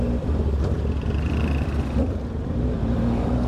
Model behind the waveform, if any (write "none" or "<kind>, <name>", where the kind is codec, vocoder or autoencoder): vocoder, BigVGAN v2